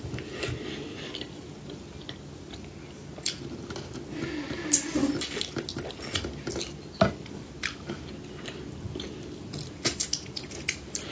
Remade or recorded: recorded